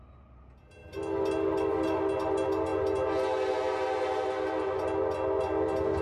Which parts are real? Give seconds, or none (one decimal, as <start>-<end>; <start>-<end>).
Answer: 0.0-6.0